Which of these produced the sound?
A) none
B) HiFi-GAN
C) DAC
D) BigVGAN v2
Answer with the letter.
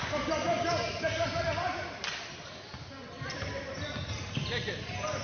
A